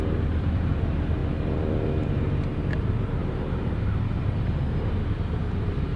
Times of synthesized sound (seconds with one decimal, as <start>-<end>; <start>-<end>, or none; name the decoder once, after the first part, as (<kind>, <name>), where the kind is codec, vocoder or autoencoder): 0.0-1.2 (vocoder, BigVGAN v2); 2.1-6.0